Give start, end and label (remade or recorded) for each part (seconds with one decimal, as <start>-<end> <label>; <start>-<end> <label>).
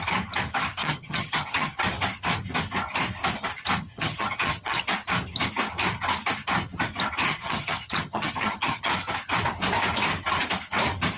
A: 0.0-0.8 recorded; 0.8-1.8 remade; 1.8-3.9 recorded; 3.9-4.8 remade; 4.8-7.3 recorded; 7.3-8.9 remade; 8.9-11.2 recorded